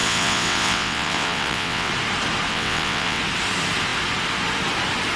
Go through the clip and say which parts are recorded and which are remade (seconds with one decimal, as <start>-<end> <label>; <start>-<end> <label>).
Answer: 0.0-1.9 remade; 1.9-2.5 recorded; 2.5-3.2 remade; 3.2-5.2 recorded